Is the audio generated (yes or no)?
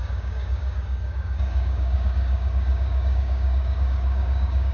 yes